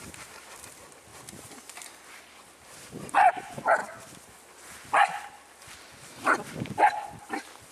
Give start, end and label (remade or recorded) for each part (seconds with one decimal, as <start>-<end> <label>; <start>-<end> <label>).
0.0-3.8 remade; 3.8-5.2 recorded; 5.2-7.7 remade